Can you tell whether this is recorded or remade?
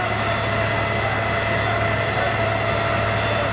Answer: recorded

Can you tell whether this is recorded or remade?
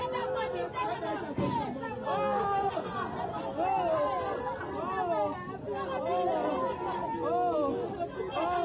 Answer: recorded